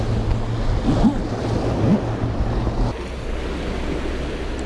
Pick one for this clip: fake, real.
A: real